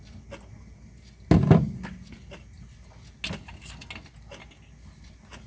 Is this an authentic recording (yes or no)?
yes